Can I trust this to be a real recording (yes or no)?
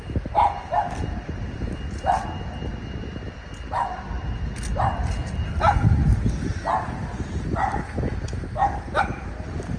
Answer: yes